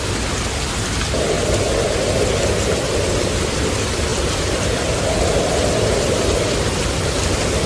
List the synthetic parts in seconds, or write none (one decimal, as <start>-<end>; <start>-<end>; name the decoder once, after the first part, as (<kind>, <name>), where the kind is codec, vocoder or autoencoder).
none